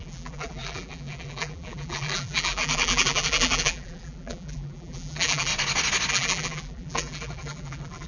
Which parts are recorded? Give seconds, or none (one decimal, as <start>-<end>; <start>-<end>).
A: 5.5-6.1